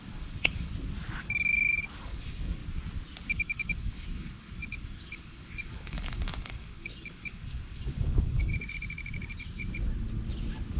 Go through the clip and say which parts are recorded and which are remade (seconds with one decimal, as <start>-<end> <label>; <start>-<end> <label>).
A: 0.0-0.7 remade; 0.7-1.2 recorded; 1.2-2.6 remade; 2.6-3.3 recorded; 3.3-8.5 remade; 8.5-10.8 recorded